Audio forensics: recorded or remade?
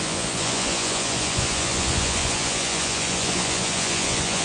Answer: remade